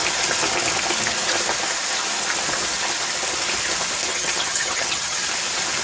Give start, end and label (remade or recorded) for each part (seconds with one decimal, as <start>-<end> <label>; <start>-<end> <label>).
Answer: 0.0-4.1 recorded; 4.1-5.2 remade; 5.2-5.8 recorded

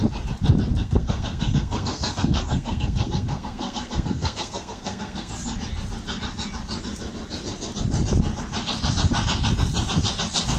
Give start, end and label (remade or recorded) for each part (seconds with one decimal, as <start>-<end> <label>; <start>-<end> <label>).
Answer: 0.0-0.7 recorded; 0.7-5.3 remade; 5.3-10.6 recorded